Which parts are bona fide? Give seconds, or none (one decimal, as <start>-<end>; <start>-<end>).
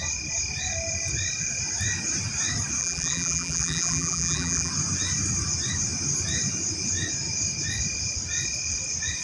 0.0-2.8; 4.7-9.2